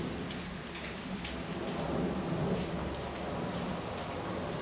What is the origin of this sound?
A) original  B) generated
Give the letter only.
A